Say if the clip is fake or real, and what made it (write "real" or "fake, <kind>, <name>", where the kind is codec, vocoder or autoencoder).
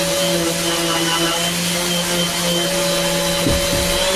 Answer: real